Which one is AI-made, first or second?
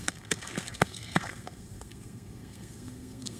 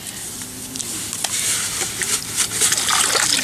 first